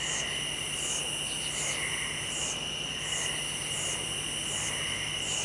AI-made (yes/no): no